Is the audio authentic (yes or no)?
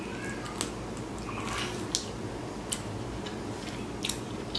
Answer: yes